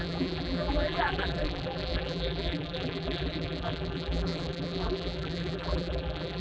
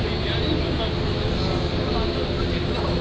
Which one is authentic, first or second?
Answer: second